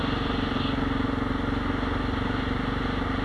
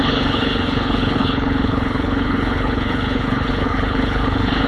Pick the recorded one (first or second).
first